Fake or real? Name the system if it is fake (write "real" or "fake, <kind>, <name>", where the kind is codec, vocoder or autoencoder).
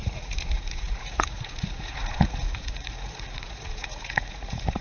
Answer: fake, vocoder, Vocos